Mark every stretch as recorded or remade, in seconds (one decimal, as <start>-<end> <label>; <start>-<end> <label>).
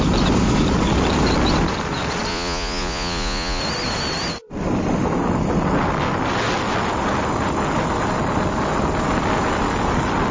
0.0-2.3 recorded; 2.3-3.6 remade; 3.6-10.3 recorded